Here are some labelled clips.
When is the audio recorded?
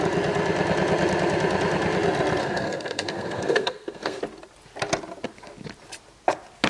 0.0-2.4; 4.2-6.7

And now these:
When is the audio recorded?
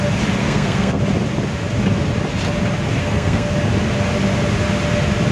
0.0-0.4; 1.0-3.0; 3.5-5.3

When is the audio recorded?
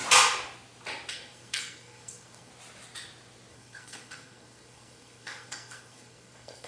0.0-1.1; 2.5-3.5